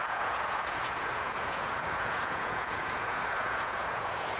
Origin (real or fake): fake